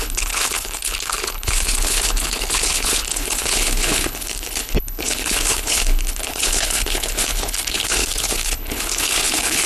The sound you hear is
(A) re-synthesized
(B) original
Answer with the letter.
A